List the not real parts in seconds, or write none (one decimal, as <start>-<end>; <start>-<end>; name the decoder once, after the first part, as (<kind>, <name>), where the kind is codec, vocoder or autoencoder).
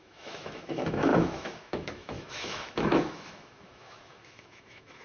0.0-5.0 (autoencoder, DAC-VAE)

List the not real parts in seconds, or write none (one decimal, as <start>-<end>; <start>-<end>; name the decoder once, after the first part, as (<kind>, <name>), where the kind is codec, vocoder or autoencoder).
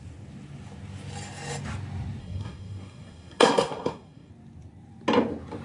2.2-4.3 (codec, SNAC)